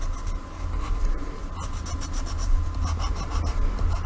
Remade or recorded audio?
recorded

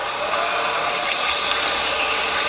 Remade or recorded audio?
remade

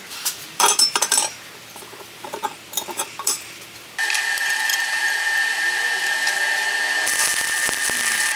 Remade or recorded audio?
remade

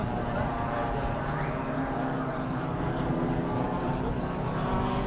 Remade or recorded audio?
remade